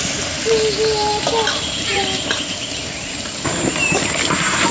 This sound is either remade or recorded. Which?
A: recorded